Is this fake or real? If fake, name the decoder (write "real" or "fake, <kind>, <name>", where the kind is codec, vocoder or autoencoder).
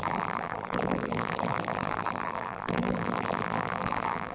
fake, vocoder, BigVGAN v2